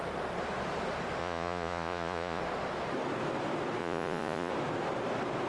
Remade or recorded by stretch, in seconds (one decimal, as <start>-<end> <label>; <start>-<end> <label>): 0.0-1.2 recorded; 1.2-2.4 remade; 2.4-3.8 recorded; 3.8-4.5 remade; 4.5-5.5 recorded